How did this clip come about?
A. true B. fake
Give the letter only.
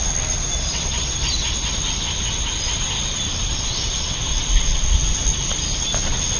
A